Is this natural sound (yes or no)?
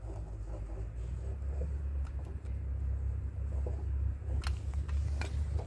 yes